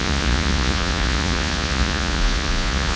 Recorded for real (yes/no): no